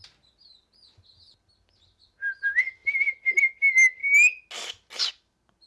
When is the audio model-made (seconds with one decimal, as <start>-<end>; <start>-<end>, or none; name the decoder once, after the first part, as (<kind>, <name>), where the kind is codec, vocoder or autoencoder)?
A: none